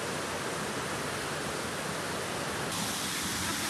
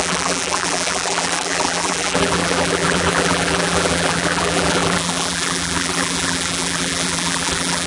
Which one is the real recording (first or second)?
first